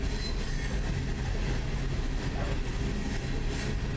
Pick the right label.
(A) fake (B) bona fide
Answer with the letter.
B